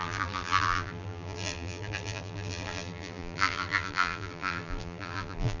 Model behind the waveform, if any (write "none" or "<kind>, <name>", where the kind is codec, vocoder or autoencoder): vocoder, BigVGAN v2